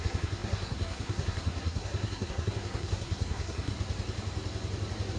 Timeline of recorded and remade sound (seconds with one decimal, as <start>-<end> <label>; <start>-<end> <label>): 0.0-3.7 remade; 3.7-5.2 recorded